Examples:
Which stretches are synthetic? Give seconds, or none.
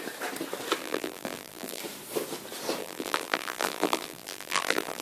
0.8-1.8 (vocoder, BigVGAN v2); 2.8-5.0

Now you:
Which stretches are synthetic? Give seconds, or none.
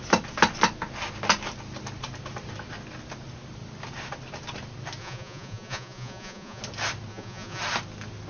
5.0-6.6 (vocoder, Vocos); 7.1-7.6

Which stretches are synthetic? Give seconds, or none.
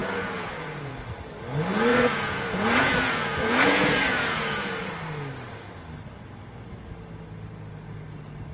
0.0-0.9 (vocoder, Vocos); 1.9-4.9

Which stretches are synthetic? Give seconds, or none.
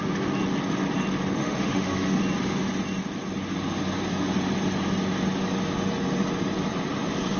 1.4-2.2 (autoencoder, DAC-VAE)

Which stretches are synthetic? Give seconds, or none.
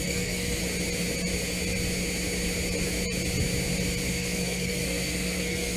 0.0-0.6 (codec, SNAC); 4.1-5.8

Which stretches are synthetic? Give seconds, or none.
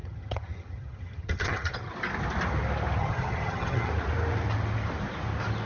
0.0-1.9 (vocoder, HiFi-GAN); 3.0-3.9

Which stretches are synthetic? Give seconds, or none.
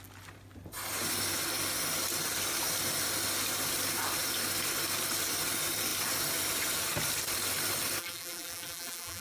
8.0-9.2 (vocoder, BigVGAN v2)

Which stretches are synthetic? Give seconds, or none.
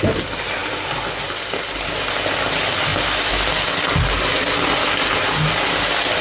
none